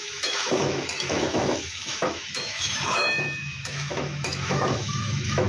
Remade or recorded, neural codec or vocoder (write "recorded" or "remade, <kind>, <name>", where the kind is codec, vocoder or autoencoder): remade, autoencoder, DAC-VAE